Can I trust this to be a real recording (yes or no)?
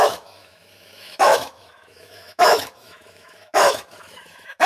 no